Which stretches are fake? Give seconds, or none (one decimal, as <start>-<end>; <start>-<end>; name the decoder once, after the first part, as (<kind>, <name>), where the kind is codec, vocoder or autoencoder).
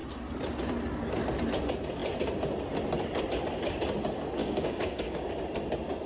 4.4-5.3 (codec, DAC)